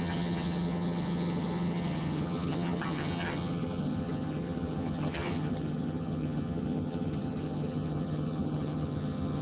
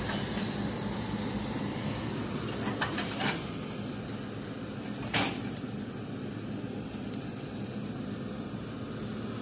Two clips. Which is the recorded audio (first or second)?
second